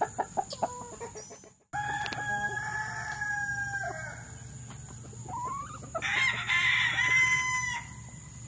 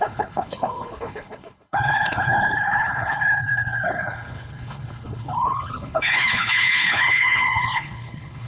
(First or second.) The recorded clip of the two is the first